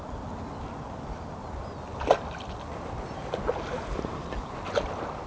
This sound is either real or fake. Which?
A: real